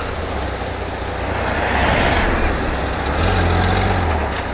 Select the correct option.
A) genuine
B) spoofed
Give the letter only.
A